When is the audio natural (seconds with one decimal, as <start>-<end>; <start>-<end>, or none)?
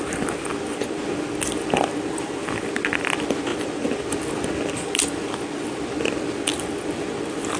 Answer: 0.0-7.6